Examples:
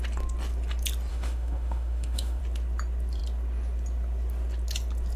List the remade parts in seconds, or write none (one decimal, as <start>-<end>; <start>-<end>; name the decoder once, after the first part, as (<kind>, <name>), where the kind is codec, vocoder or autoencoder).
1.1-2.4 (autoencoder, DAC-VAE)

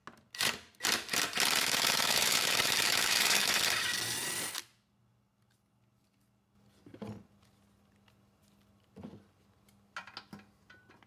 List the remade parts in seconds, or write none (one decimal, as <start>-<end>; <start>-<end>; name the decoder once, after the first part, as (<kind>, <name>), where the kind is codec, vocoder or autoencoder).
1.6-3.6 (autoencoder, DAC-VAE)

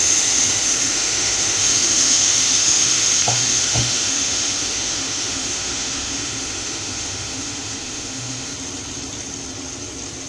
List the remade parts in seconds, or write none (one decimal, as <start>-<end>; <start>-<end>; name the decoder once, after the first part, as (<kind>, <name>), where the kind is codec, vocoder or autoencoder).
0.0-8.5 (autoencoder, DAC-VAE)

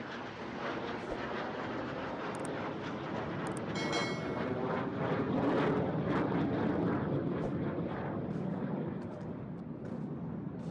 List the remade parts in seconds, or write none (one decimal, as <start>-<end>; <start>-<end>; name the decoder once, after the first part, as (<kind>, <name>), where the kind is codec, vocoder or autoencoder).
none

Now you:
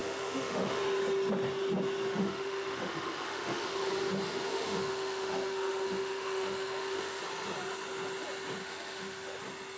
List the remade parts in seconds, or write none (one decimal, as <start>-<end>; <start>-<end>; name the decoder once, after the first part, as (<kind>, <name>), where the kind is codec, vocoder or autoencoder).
0.0-0.8 (autoencoder, DAC-VAE); 2.2-3.9; 4.5-7.2; 8.6-9.4